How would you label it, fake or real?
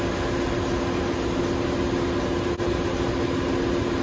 real